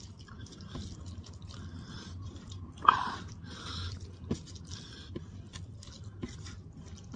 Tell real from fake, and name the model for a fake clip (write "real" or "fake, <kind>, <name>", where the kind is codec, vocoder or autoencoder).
real